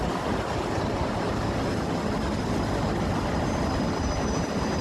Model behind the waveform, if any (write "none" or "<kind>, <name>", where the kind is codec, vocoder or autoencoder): none